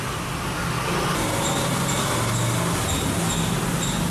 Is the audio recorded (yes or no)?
yes